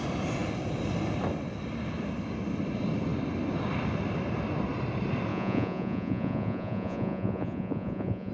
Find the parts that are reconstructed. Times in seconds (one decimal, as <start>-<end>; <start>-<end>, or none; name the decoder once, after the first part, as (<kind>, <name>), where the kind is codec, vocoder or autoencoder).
5.3-8.3 (vocoder, Vocos)